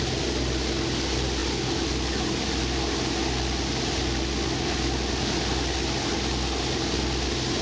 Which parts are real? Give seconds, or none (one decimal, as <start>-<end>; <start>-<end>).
0.0-7.6